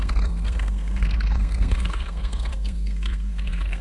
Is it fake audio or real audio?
fake